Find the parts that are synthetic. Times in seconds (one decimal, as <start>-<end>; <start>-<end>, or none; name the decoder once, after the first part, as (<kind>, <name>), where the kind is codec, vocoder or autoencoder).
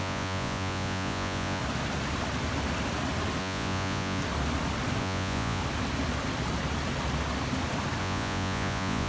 0.0-1.6 (vocoder, Vocos); 3.4-4.2; 5.0-5.6; 8.0-9.1